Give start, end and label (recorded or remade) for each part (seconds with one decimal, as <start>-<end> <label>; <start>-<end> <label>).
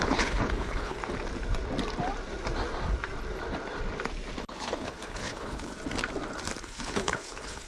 0.0-1.0 remade; 1.0-4.4 recorded; 4.4-5.7 remade; 5.7-6.6 recorded; 6.6-7.7 remade